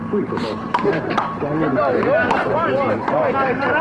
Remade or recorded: recorded